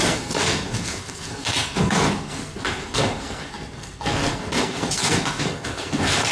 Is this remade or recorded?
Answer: remade